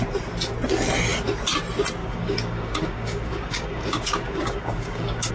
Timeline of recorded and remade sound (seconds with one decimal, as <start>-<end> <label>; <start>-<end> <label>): 0.0-2.0 recorded; 2.0-5.3 remade